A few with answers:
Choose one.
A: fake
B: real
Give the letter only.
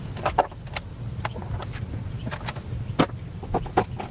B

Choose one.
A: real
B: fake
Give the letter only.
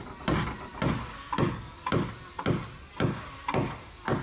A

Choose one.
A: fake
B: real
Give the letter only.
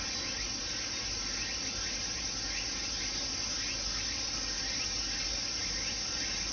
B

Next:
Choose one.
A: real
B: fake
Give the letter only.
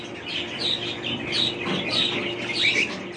A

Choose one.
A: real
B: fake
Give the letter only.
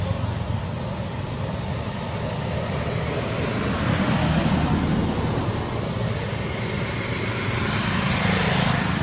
A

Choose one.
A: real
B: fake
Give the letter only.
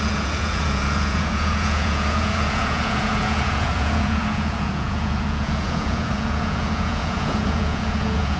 B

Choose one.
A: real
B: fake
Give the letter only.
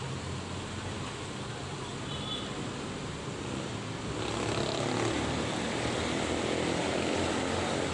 A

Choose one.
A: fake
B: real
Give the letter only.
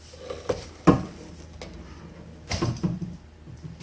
B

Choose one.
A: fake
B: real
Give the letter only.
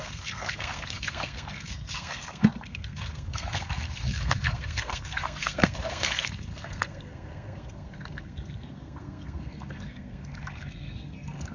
A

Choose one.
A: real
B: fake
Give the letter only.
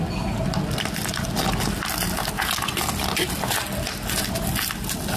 A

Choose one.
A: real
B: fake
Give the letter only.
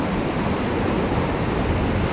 A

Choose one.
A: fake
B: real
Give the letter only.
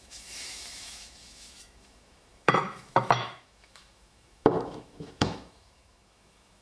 A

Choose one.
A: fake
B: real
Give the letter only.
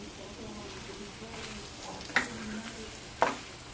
B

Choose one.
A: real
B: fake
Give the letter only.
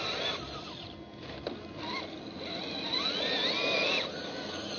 A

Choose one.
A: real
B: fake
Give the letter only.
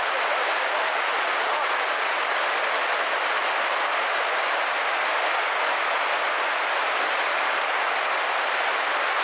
A